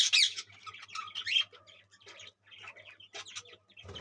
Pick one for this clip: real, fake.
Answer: real